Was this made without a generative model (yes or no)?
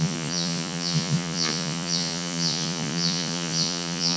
no